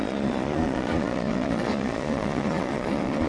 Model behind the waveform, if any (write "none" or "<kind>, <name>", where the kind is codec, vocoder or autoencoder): vocoder, Vocos